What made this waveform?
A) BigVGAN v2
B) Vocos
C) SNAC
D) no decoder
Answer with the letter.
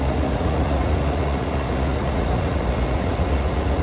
B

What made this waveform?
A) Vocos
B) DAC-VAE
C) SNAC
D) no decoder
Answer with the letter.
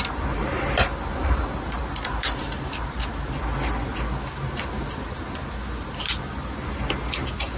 D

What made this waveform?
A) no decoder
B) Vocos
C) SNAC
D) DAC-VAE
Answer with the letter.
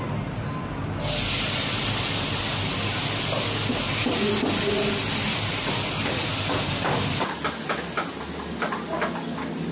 A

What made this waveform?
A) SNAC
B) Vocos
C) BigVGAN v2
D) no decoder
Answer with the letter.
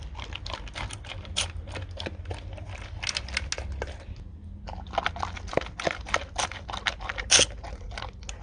D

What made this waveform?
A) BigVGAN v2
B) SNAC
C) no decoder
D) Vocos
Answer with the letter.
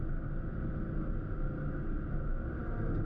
C